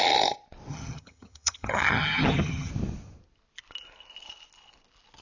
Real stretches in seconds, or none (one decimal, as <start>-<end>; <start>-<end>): 0.0-0.7; 2.7-5.2